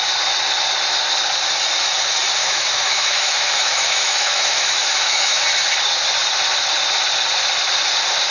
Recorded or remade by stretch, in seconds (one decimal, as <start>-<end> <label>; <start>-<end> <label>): 0.0-2.4 recorded; 2.4-5.4 remade; 5.4-8.3 recorded